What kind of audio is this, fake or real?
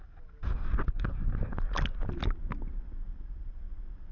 real